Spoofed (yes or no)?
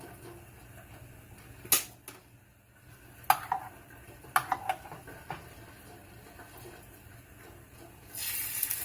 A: no